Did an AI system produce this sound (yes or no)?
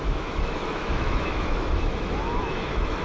yes